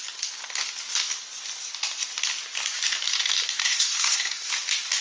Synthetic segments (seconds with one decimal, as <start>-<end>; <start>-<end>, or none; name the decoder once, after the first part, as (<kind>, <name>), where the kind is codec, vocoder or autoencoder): 3.6-4.5 (codec, SNAC)